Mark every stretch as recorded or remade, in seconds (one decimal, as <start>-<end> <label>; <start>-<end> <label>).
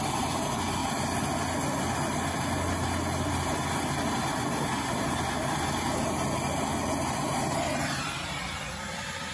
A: 0.0-9.3 recorded